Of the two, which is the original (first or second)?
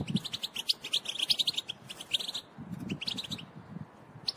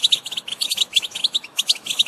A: first